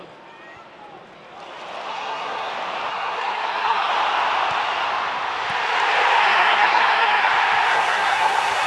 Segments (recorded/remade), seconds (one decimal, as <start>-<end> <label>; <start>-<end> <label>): 0.0-1.9 recorded; 1.9-2.5 remade; 2.5-2.9 recorded; 2.9-3.9 remade; 3.9-6.2 recorded; 6.2-7.3 remade; 7.3-7.7 recorded; 7.7-8.7 remade